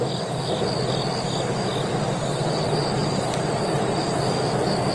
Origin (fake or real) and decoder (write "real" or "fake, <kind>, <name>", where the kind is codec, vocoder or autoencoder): real